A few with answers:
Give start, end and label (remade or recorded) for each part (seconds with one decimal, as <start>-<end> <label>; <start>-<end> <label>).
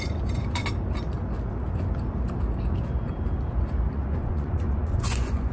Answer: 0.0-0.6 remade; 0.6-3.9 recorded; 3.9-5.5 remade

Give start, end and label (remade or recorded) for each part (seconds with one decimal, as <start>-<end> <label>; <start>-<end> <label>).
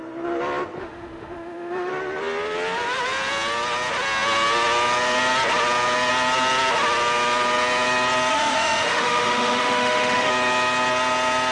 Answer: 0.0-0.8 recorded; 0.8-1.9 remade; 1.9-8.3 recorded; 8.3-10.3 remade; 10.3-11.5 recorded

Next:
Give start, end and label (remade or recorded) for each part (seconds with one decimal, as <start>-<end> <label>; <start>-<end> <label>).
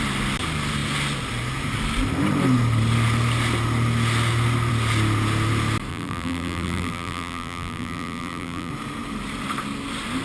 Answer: 0.0-5.9 recorded; 5.9-8.7 remade; 8.7-10.2 recorded